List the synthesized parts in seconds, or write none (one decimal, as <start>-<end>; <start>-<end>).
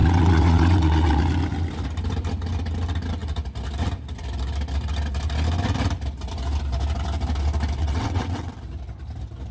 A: 0.0-1.2; 7.8-8.5